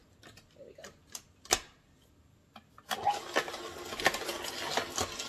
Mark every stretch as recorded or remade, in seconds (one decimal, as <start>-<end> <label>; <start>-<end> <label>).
0.0-5.3 recorded

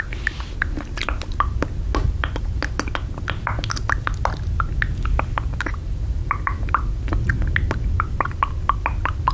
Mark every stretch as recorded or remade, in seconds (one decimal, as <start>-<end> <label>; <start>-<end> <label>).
0.0-5.8 recorded; 5.8-6.7 remade; 6.7-9.3 recorded

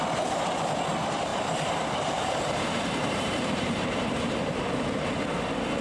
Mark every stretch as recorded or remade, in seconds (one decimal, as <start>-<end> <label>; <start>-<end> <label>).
0.0-1.3 recorded; 1.3-4.8 remade; 4.8-5.8 recorded

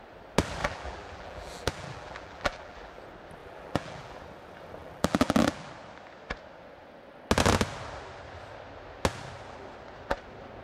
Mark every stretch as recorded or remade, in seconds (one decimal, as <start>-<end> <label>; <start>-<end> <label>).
0.0-0.6 recorded; 0.6-3.0 remade; 3.0-3.4 recorded; 3.4-4.2 remade; 4.2-4.8 recorded; 4.8-5.7 remade; 5.7-10.6 recorded

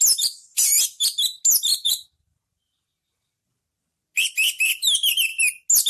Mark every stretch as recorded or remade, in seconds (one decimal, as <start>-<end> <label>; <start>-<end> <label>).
0.0-1.7 recorded; 1.7-3.6 remade; 3.6-5.9 recorded